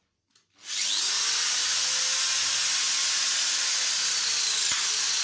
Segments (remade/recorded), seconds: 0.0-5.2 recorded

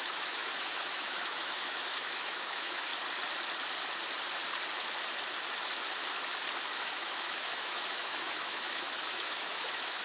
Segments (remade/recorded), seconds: 0.0-2.9 remade; 2.9-6.8 recorded; 6.8-10.0 remade

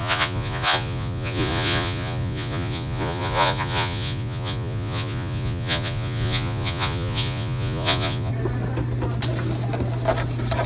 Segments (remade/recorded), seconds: 0.0-8.3 remade; 8.3-10.7 recorded

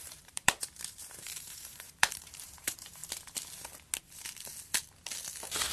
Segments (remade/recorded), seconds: 0.0-3.0 remade; 3.0-4.0 recorded; 4.0-4.5 remade; 4.5-5.7 recorded

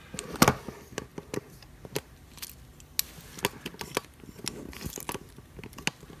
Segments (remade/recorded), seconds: 0.0-6.2 recorded